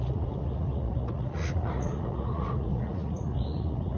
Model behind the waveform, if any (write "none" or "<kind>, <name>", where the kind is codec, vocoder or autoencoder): vocoder, Vocos